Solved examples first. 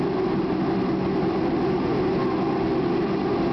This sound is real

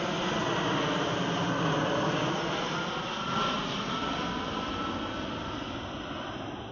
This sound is real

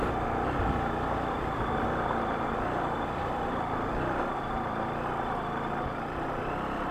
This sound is real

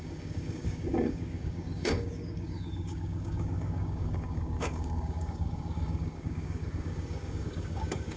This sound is fake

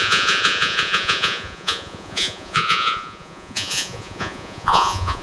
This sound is fake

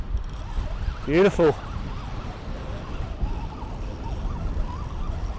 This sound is real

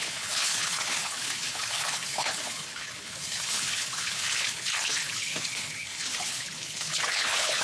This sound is fake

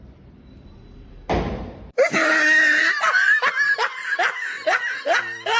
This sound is real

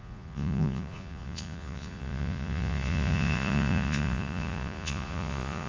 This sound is fake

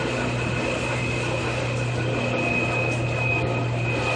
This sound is real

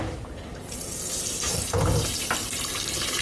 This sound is fake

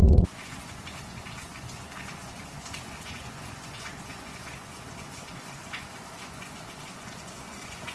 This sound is fake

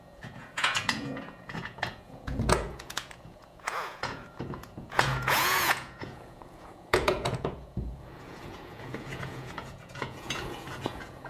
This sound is fake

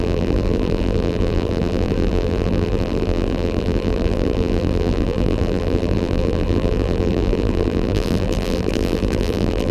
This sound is fake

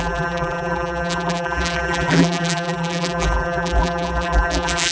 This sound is fake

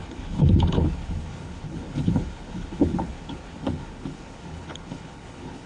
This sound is fake